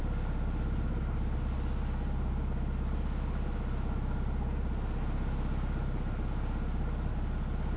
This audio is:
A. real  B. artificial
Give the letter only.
A